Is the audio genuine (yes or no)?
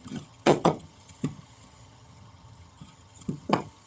no